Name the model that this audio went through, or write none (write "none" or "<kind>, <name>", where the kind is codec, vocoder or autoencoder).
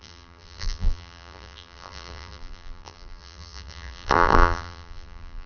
vocoder, BigVGAN v2